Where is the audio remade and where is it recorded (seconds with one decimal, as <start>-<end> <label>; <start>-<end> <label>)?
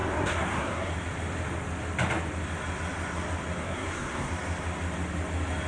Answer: 0.0-0.9 remade; 0.9-3.6 recorded; 3.6-4.3 remade; 4.3-5.7 recorded